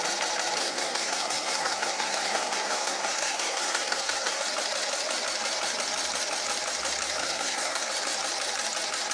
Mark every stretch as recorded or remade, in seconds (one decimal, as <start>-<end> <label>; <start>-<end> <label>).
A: 0.0-0.6 recorded; 0.6-4.4 remade; 4.4-7.2 recorded; 7.2-7.9 remade; 7.9-9.1 recorded